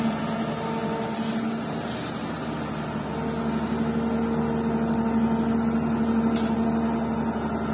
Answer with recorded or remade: recorded